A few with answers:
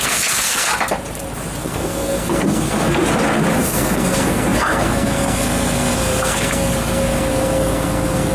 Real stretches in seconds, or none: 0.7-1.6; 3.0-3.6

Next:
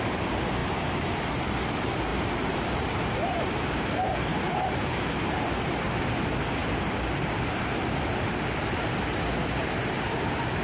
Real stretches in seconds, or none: 0.0-0.6; 1.2-2.1; 5.5-10.6

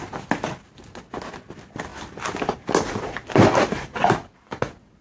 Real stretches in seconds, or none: 0.0-5.0

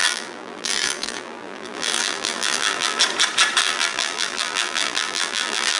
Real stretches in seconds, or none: 3.0-3.6

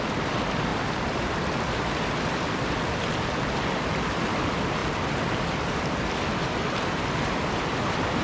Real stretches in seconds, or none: 0.0-8.2

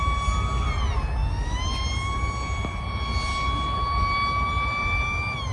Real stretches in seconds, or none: 0.0-5.5

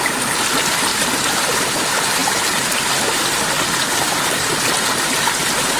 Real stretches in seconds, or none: 0.0-5.8